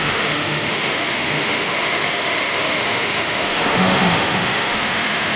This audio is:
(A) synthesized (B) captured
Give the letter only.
A